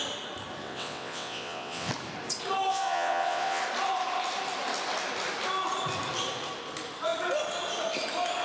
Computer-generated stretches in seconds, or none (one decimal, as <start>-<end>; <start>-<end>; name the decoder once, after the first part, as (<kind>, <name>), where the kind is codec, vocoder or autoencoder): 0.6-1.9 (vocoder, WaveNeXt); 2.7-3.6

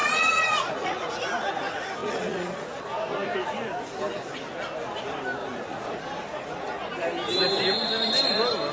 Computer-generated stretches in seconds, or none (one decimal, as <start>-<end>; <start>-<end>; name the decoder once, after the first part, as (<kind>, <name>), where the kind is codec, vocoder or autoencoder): 0.0-1.1 (vocoder, Vocos); 2.0-2.8; 5.4-5.9

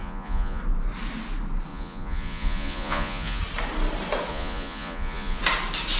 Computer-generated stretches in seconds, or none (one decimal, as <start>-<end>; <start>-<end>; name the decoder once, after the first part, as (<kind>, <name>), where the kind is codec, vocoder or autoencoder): 0.0-0.6 (vocoder, Vocos); 1.7-3.4; 4.3-5.4

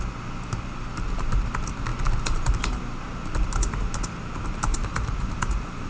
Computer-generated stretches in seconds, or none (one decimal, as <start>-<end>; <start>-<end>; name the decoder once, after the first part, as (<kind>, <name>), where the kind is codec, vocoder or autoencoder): 4.7-5.9 (vocoder, BigVGAN v2)

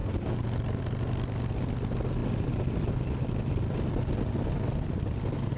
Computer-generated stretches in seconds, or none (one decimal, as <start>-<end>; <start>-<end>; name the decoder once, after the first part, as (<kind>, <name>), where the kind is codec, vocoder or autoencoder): none

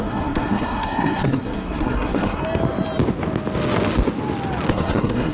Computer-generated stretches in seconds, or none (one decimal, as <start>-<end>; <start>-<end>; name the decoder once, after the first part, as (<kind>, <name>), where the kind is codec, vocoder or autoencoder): 0.0-2.4 (codec, SNAC); 4.7-5.3

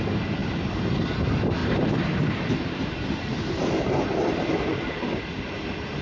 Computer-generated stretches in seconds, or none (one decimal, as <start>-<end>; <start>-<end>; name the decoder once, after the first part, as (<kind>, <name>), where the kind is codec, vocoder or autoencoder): 0.4-1.0 (vocoder, BigVGAN v2); 1.6-5.2

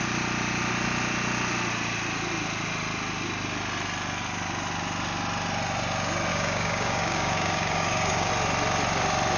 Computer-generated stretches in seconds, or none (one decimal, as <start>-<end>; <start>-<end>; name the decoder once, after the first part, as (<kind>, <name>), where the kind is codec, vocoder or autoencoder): 6.3-8.3 (codec, DAC)